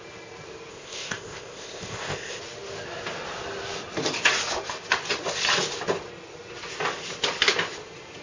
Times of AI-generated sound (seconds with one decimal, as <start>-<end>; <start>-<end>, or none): 0.7-2.4